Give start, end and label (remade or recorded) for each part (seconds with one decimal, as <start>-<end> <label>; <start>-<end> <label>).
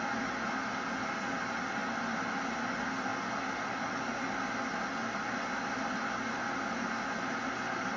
0.0-8.0 recorded